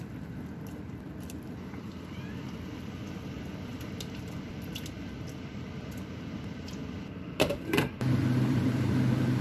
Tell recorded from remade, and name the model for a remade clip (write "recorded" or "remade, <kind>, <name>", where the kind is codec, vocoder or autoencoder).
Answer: remade, vocoder, BigVGAN v2